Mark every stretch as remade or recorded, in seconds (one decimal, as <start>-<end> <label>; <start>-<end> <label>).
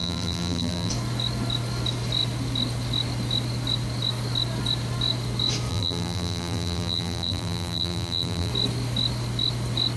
0.0-0.9 remade; 0.9-5.7 recorded; 5.7-8.5 remade; 8.5-10.0 recorded